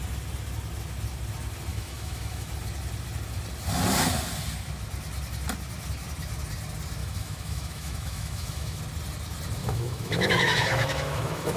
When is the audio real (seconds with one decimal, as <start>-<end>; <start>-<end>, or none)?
0.0-1.7; 2.5-7.0; 8.8-9.6